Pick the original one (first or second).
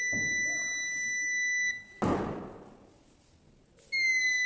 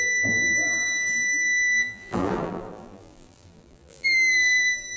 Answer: first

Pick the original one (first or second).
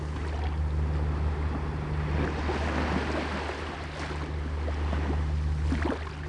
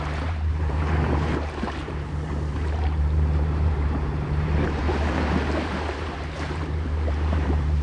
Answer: first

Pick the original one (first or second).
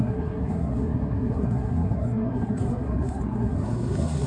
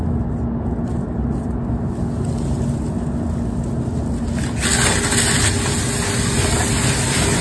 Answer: second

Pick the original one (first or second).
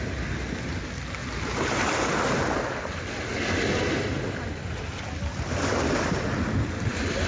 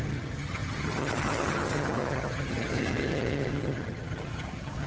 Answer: first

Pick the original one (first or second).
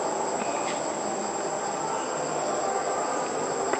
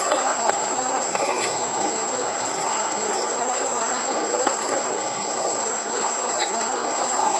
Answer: first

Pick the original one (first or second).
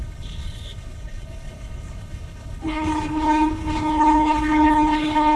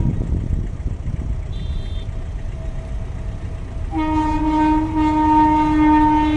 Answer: second